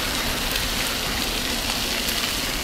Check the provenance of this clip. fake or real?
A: real